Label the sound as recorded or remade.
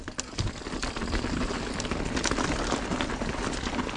recorded